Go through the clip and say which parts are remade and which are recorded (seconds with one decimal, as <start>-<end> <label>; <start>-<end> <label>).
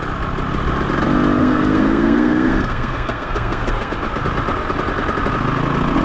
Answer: 0.0-1.4 recorded; 1.4-3.9 remade; 3.9-6.0 recorded